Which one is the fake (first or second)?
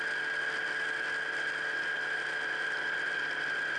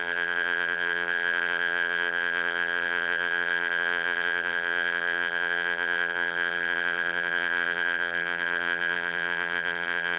second